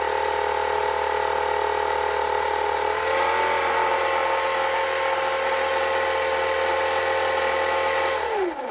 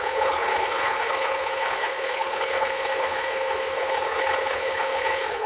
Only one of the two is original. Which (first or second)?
first